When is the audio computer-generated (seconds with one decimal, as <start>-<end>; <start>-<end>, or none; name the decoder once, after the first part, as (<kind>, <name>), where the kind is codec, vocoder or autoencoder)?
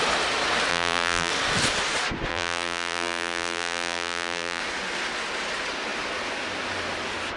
0.7-1.3 (vocoder, BigVGAN v2); 2.3-4.6